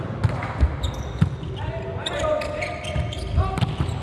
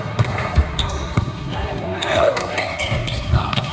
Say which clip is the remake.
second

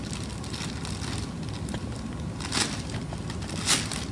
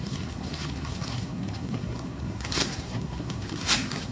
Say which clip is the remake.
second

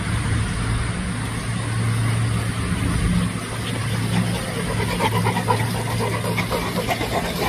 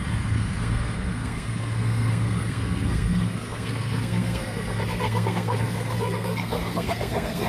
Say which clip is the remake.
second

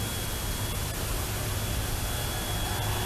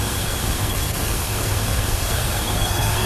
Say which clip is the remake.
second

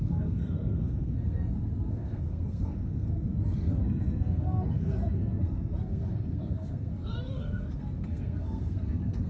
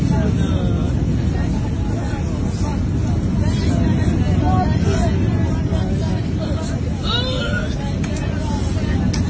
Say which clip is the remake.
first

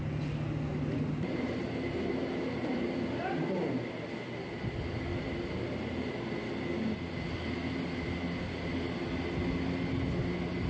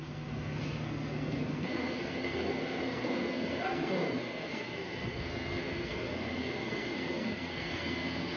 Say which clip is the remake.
second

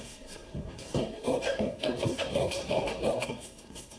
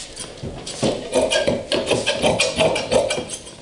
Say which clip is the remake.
first